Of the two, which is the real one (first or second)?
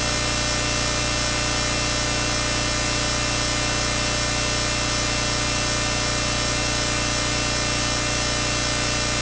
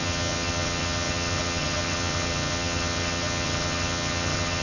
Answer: first